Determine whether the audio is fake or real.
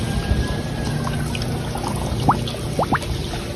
real